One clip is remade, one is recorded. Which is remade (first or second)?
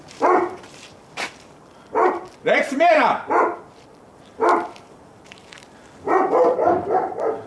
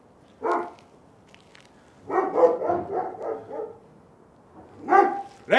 first